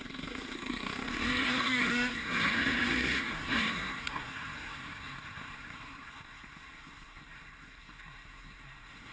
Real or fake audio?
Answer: fake